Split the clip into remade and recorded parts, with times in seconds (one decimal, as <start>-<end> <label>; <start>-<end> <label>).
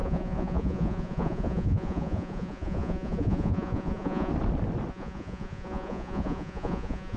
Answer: 0.0-4.3 remade; 4.3-4.9 recorded; 4.9-7.2 remade